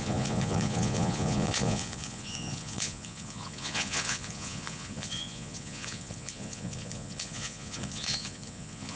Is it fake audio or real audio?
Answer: fake